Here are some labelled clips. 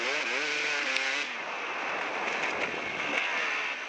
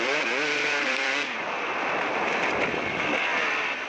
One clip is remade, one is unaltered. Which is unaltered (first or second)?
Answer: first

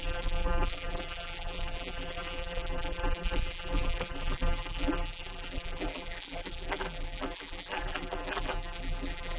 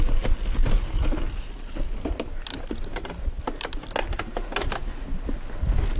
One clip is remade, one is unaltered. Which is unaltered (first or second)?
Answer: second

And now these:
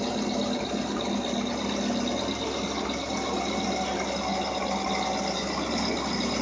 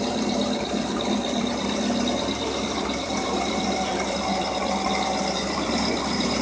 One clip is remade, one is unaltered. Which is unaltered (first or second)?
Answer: first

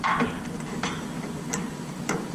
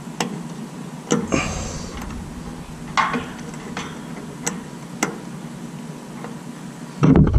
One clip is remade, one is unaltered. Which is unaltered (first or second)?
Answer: second